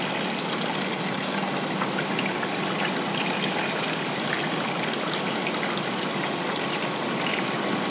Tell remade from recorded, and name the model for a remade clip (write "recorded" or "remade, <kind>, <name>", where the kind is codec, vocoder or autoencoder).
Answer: recorded